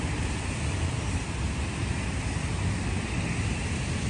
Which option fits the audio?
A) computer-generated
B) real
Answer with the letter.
B